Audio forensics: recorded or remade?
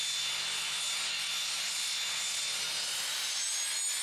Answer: recorded